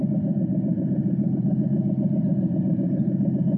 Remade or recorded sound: remade